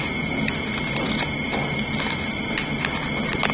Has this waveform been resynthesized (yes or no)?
no